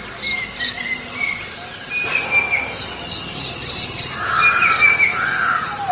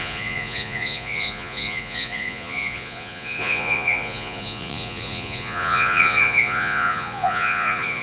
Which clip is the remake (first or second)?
second